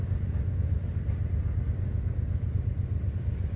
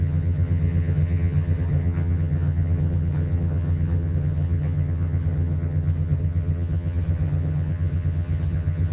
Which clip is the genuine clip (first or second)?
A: first